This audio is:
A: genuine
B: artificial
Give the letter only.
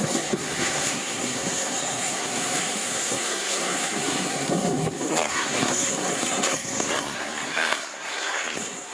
B